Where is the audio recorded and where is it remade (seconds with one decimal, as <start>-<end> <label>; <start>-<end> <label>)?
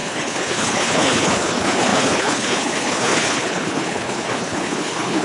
0.0-5.2 remade